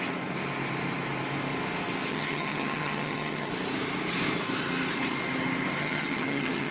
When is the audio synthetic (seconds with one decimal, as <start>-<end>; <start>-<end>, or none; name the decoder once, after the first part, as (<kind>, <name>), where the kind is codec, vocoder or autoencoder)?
2.1-3.5 (vocoder, HiFi-GAN); 5.8-6.7